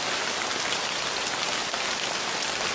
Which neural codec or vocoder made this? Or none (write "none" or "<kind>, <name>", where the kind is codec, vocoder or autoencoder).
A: none